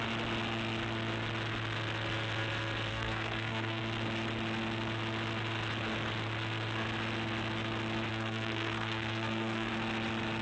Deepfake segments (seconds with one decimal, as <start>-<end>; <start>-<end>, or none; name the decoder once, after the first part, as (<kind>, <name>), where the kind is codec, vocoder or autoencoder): 2.9-3.8 (codec, SNAC); 8.1-9.7